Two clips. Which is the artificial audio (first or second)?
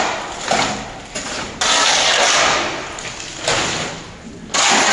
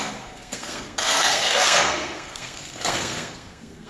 second